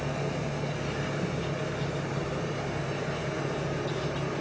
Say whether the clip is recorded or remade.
recorded